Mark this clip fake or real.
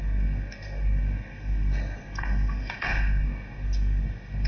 fake